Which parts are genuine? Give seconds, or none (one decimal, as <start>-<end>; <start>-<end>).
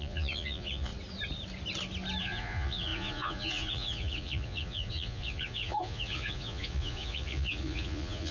0.9-2.2